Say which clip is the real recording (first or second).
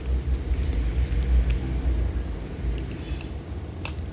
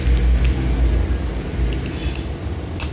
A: second